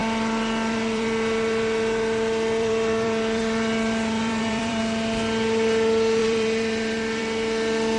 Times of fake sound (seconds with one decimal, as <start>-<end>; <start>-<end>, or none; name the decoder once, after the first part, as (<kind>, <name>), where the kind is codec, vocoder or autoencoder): 0.0-4.8 (vocoder, BigVGAN v2); 6.2-7.2